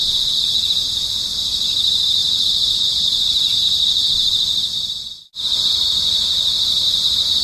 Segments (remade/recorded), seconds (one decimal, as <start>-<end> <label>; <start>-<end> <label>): 0.0-2.2 recorded; 2.2-3.6 remade; 3.6-7.4 recorded